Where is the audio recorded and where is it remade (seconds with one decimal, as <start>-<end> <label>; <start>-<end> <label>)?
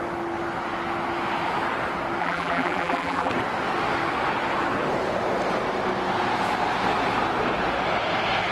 0.0-2.2 recorded; 2.2-3.3 remade; 3.3-8.5 recorded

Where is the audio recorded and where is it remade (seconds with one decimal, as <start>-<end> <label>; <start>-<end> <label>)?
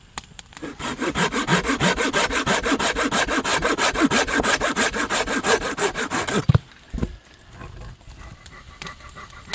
0.0-9.5 recorded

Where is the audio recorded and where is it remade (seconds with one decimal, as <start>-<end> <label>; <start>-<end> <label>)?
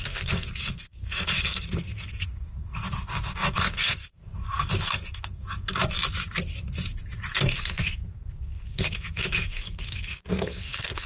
0.0-5.7 remade; 5.7-7.3 recorded; 7.3-11.1 remade